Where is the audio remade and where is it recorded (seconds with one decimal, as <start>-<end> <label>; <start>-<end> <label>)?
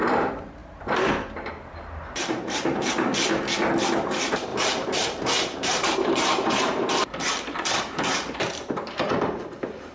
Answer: 0.0-3.1 remade; 3.1-4.0 recorded; 4.0-9.9 remade